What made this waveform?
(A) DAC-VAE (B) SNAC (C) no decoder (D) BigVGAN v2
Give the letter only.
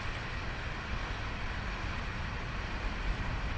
C